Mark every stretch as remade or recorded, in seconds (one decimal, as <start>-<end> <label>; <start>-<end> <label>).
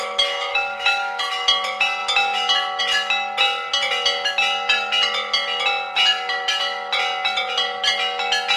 0.0-0.5 recorded; 0.5-1.2 remade; 1.2-8.6 recorded